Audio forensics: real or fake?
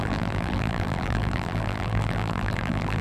fake